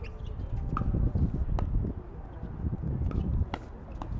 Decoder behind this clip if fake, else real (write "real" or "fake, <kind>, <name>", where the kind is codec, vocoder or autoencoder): real